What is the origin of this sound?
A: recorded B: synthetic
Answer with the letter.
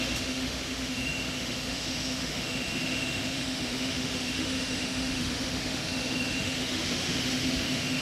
B